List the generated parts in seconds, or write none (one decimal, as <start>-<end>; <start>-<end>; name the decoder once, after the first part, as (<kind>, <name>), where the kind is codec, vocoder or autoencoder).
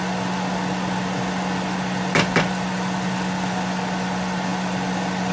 none